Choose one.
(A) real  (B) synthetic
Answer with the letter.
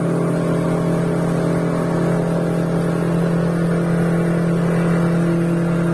A